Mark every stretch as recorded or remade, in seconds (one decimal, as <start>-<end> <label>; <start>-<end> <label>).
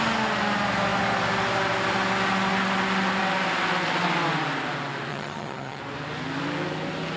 0.0-5.1 recorded; 5.1-5.8 remade; 5.8-7.2 recorded